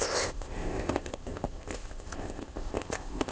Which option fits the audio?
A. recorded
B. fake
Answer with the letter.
B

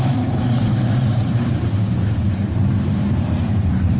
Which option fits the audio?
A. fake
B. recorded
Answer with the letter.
A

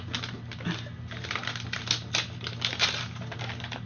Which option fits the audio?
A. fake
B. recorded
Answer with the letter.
B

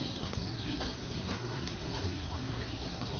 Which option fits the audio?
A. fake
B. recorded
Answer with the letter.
A